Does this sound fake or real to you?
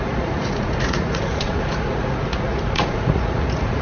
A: fake